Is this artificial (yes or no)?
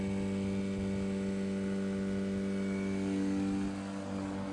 no